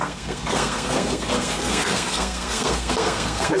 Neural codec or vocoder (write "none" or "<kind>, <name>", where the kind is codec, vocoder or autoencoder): codec, SNAC